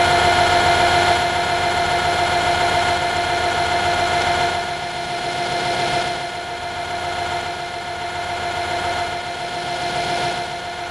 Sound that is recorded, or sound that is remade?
recorded